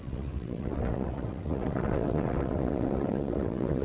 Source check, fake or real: fake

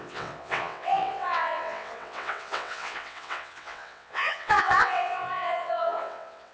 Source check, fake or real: fake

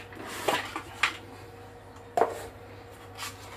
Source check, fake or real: real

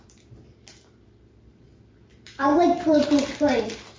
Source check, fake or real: fake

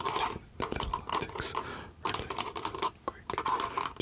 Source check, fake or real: real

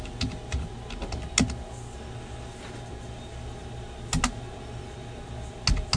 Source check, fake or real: real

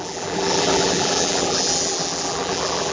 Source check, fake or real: fake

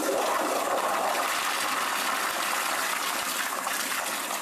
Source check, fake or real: real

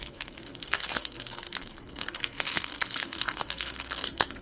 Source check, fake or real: fake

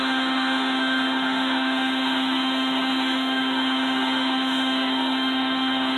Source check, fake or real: fake